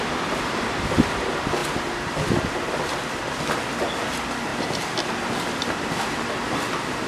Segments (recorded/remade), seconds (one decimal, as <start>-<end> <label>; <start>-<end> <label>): 0.0-7.1 recorded